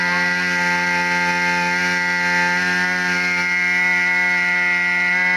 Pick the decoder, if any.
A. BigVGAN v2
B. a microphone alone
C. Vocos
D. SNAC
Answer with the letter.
B